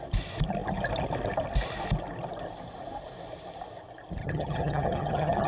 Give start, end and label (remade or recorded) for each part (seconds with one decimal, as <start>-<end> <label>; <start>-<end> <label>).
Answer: 0.0-4.2 recorded; 4.2-5.5 remade